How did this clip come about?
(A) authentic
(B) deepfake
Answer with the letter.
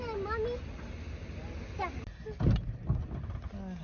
A